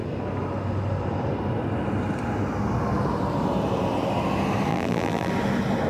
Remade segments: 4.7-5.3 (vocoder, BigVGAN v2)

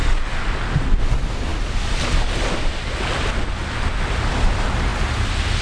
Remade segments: 1.0-1.5 (vocoder, BigVGAN v2); 4.0-5.6

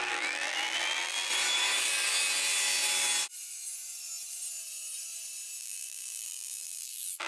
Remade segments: 0.0-1.3 (vocoder, BigVGAN v2); 5.6-7.3

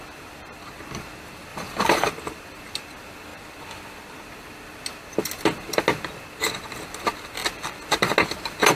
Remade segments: 1.5-2.1 (vocoder, BigVGAN v2)

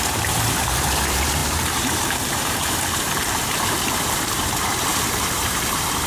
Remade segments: 0.0-6.1 (vocoder, BigVGAN v2)

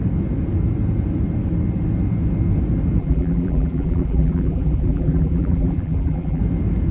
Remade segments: 3.0-6.4 (vocoder, BigVGAN v2)

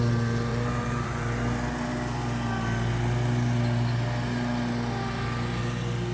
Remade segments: 0.5-1.2 (vocoder, BigVGAN v2)

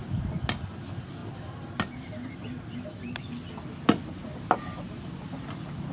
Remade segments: none